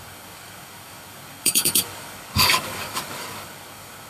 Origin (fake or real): fake